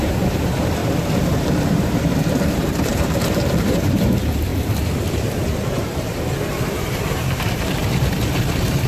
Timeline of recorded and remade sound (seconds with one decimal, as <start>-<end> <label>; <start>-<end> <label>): 0.0-7.8 remade; 7.8-8.5 recorded; 8.5-8.9 remade

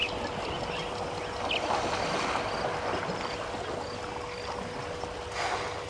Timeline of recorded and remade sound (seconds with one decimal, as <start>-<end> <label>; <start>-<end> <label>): 0.0-5.9 recorded

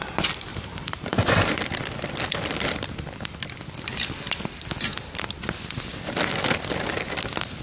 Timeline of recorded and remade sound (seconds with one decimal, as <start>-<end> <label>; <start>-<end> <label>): 0.0-0.5 recorded; 0.5-1.6 remade; 1.6-7.6 recorded

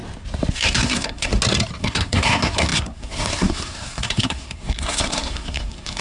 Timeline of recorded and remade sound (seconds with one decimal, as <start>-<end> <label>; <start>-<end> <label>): 0.0-0.5 recorded; 0.5-1.3 remade; 1.3-1.8 recorded; 1.8-6.0 remade

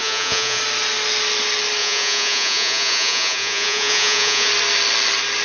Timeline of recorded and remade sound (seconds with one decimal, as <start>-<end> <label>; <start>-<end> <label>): 0.0-0.6 remade; 0.6-1.8 recorded; 1.8-4.5 remade; 4.5-5.4 recorded

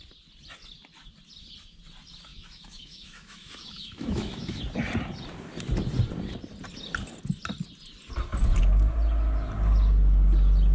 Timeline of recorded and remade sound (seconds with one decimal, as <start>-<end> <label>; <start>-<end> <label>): 0.0-2.3 recorded; 2.3-4.6 remade; 4.6-10.7 recorded

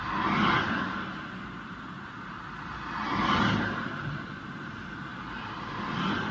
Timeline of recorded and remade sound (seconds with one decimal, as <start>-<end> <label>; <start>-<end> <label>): 0.0-6.3 recorded